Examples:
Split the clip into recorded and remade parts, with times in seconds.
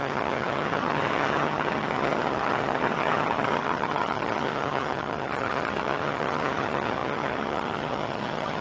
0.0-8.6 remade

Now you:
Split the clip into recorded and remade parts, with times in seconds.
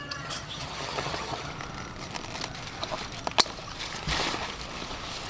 0.0-1.5 remade; 1.5-5.3 recorded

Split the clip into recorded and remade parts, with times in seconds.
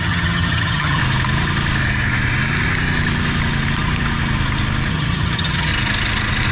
0.0-1.0 remade; 1.0-4.9 recorded; 4.9-5.7 remade; 5.7-6.5 recorded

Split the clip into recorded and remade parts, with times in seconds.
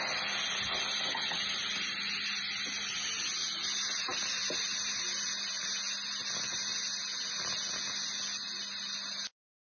0.0-9.6 recorded